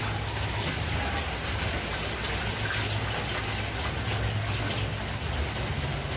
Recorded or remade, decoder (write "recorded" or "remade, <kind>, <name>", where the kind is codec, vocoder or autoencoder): recorded